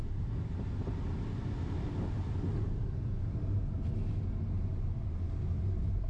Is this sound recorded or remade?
recorded